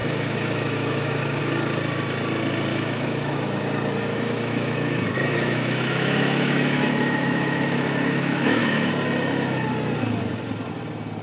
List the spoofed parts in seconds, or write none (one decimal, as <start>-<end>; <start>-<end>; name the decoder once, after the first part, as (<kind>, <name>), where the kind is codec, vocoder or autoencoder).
0.0-1.4 (autoencoder, DAC-VAE); 2.7-3.6; 4.1-8.9